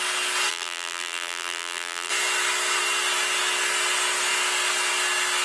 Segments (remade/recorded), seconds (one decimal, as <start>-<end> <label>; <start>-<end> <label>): 0.0-0.5 recorded; 0.5-2.1 remade; 2.1-5.4 recorded